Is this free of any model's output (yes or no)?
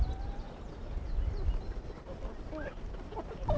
yes